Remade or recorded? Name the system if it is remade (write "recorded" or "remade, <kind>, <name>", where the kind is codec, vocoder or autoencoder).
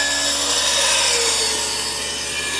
recorded